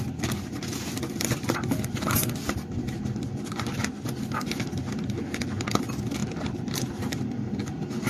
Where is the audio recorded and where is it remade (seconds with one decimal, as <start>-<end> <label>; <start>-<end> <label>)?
0.0-6.2 recorded; 6.2-7.2 remade; 7.2-8.1 recorded